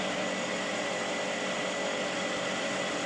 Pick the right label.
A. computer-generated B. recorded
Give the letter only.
B